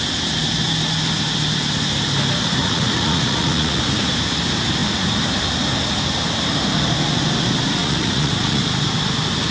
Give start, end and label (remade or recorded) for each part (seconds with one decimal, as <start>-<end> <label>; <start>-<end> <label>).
0.0-2.6 recorded; 2.6-3.8 remade; 3.8-7.8 recorded; 7.8-8.6 remade; 8.6-9.5 recorded